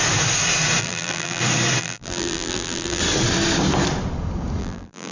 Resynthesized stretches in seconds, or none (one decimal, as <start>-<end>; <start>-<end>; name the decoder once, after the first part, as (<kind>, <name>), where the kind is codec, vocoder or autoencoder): 0.8-1.4 (vocoder, BigVGAN v2); 1.8-3.0; 4.6-5.1